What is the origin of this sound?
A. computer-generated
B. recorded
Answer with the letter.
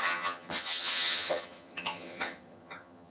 A